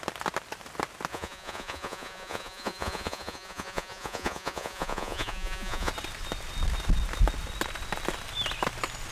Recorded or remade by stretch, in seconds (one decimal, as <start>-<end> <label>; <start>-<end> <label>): 0.0-1.1 recorded; 1.1-5.9 remade; 5.9-9.1 recorded